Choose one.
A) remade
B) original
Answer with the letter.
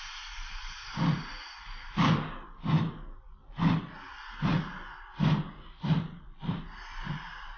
B